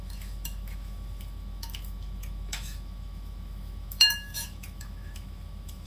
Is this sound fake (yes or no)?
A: yes